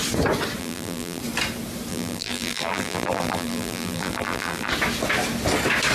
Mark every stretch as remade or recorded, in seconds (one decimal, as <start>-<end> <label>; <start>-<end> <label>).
0.0-0.6 recorded; 0.6-1.2 remade; 1.2-1.9 recorded; 1.9-4.7 remade; 4.7-5.9 recorded